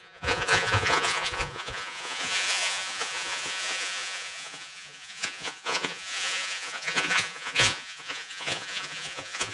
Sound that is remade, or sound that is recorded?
remade